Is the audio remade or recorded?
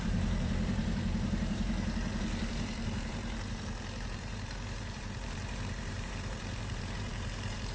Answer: remade